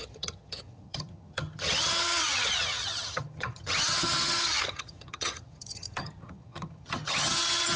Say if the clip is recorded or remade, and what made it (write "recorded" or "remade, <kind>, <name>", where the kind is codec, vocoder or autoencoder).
remade, vocoder, HiFi-GAN